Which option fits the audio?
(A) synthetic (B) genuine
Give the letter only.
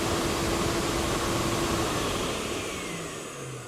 B